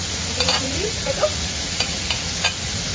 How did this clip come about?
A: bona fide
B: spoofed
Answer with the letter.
B